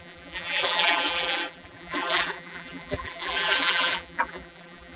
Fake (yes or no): yes